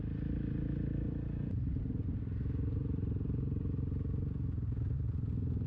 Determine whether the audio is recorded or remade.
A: recorded